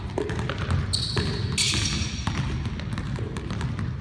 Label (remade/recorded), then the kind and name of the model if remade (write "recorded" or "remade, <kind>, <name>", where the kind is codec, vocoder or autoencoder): recorded